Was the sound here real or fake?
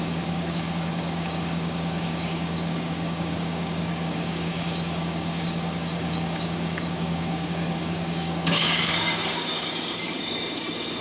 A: fake